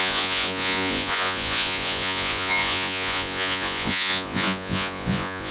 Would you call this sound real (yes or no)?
no